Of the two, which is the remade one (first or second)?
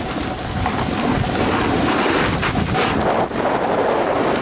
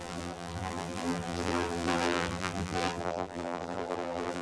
second